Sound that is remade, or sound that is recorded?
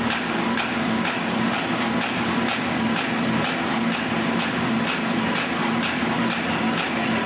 recorded